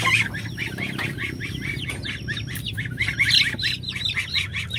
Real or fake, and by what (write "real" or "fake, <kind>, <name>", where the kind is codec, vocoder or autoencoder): real